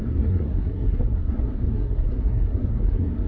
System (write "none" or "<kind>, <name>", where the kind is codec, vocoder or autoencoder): codec, SNAC